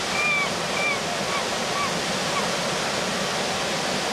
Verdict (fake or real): real